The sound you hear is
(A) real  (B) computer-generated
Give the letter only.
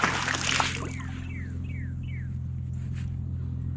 A